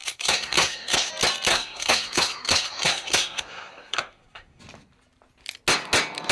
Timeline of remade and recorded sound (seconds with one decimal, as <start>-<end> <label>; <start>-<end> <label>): 0.0-1.1 remade; 1.1-1.5 recorded; 1.5-4.6 remade; 4.6-6.3 recorded